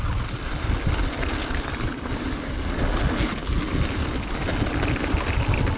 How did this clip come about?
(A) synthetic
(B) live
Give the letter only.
B